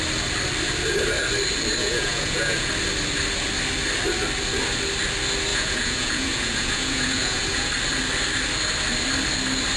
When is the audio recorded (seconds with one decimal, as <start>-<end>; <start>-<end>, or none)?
0.0-1.8; 2.7-5.5; 7.7-9.8